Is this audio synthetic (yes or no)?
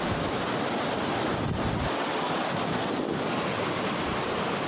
no